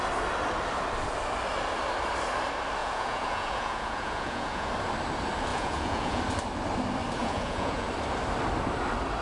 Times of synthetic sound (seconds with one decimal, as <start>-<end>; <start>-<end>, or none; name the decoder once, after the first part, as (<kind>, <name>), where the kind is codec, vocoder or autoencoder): 2.8-4.7 (vocoder, Vocos); 5.5-6.2; 7.2-7.9